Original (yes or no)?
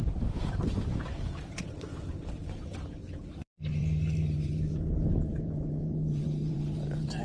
no